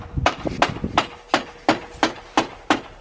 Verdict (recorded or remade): recorded